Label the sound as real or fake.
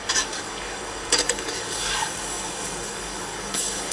fake